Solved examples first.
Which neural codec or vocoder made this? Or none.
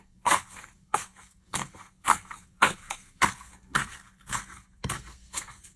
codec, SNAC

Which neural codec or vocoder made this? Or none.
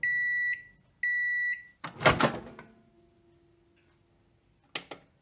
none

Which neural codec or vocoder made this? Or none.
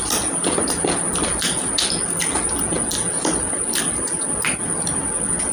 none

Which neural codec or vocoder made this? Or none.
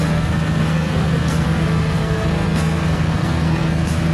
codec, SNAC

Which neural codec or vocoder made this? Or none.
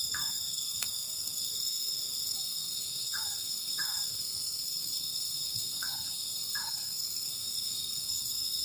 codec, SNAC